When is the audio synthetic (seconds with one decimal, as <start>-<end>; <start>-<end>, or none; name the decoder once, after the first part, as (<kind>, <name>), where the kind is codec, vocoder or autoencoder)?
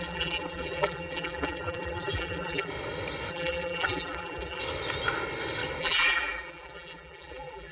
0.0-2.7 (vocoder, BigVGAN v2); 3.3-4.6; 5.8-7.7